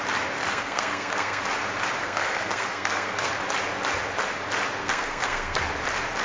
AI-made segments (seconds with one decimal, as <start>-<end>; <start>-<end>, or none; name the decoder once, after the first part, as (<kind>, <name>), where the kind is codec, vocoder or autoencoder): 0.5-1.4 (codec, SNAC); 2.0-3.3; 4.8-5.6